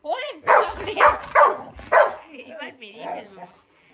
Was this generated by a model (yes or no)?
yes